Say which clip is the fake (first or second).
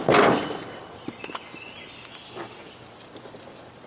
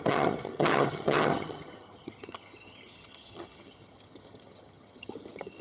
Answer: second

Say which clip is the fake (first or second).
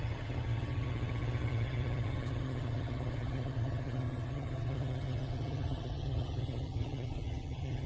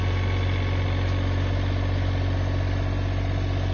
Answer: first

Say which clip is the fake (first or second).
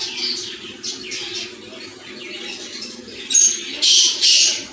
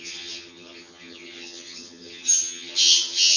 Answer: second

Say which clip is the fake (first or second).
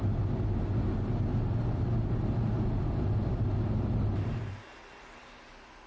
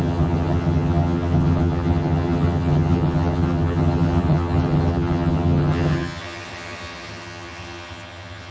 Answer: second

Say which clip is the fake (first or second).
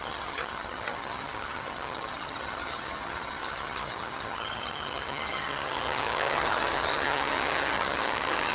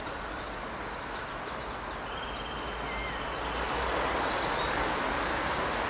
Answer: first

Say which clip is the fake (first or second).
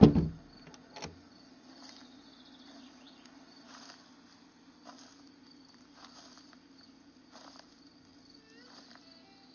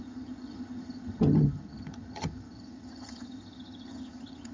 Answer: second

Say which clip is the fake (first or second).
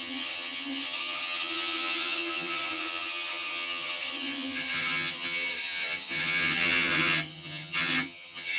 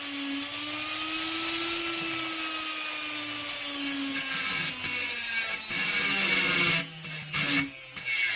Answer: first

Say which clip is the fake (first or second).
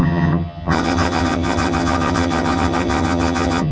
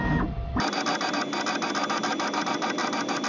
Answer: first